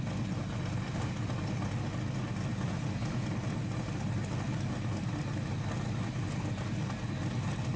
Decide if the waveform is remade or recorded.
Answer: recorded